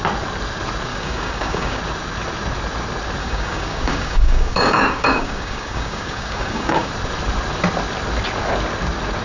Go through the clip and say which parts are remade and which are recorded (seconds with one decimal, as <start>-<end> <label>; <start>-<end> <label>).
0.0-0.9 recorded; 0.9-1.8 remade; 1.8-3.2 recorded; 3.2-6.9 remade; 6.9-9.2 recorded